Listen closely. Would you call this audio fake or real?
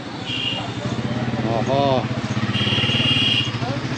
real